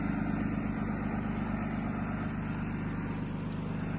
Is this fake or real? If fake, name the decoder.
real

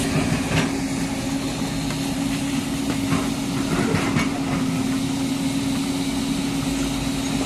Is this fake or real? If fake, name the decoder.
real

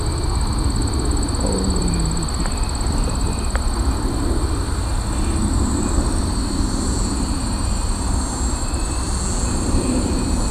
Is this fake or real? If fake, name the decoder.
real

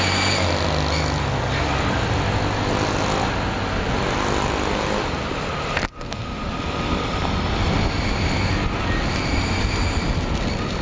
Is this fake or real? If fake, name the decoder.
real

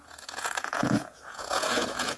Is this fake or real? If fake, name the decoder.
fake, vocoder, Vocos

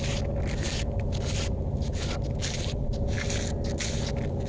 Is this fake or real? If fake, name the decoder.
real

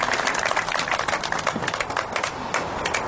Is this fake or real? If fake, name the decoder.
real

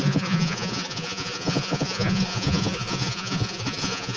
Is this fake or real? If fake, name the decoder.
fake, vocoder, Vocos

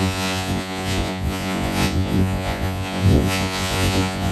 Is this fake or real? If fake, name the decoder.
fake, vocoder, Vocos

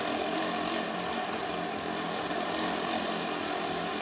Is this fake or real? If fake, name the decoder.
real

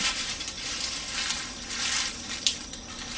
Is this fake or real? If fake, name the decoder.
real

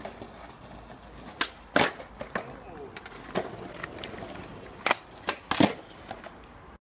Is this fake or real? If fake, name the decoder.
real